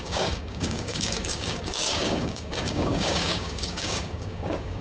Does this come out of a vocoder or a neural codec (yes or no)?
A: yes